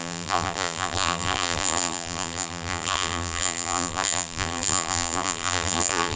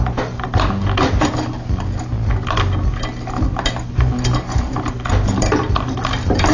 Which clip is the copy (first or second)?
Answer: first